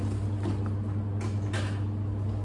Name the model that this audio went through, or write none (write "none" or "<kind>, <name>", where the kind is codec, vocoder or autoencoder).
none